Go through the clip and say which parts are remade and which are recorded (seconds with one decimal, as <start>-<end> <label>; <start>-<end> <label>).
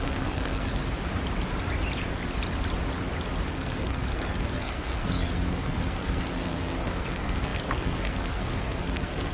0.0-0.8 remade; 0.8-3.5 recorded; 3.5-9.3 remade